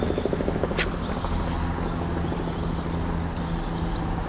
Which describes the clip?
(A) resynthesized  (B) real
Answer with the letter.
B